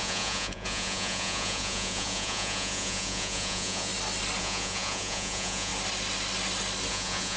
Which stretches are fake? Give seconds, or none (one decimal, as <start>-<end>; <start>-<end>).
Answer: 0.0-3.9; 4.4-5.7; 6.9-7.4